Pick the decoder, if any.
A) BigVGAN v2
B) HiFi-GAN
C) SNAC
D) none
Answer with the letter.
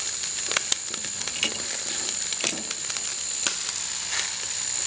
D